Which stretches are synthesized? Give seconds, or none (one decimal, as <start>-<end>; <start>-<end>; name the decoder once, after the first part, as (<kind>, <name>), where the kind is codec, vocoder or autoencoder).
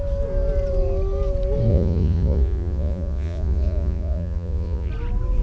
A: 1.7-4.9 (vocoder, Vocos)